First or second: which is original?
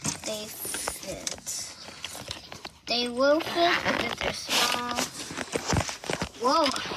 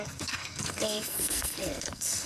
first